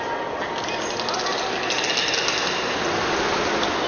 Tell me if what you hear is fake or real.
real